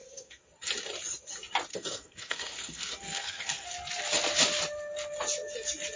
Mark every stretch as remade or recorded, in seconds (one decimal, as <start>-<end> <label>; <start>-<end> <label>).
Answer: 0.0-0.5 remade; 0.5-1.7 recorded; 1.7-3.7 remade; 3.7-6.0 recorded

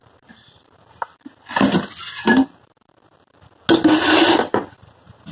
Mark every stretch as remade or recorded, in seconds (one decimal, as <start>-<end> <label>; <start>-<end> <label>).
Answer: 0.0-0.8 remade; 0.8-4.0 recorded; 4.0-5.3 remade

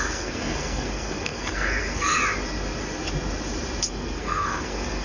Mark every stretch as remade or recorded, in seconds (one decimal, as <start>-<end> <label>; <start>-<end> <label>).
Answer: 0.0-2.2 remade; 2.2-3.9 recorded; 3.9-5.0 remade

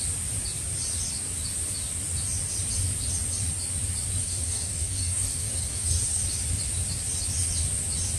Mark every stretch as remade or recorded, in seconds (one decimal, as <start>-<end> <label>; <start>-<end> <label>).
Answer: 0.0-4.2 recorded; 4.2-6.2 remade; 6.2-8.2 recorded

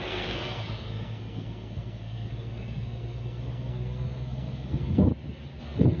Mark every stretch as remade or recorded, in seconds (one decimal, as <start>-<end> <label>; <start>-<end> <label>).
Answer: 0.0-5.1 remade; 5.1-5.6 recorded; 5.6-6.0 remade

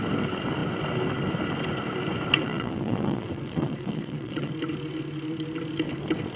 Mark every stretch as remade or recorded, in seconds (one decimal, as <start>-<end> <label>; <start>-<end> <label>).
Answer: 0.0-2.4 recorded; 2.4-4.5 remade; 4.5-6.4 recorded

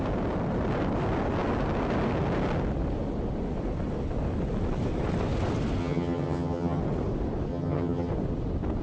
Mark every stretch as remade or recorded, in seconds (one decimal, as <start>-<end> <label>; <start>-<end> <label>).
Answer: 0.0-5.8 recorded; 5.8-6.8 remade; 6.8-7.5 recorded; 7.5-8.1 remade; 8.1-8.8 recorded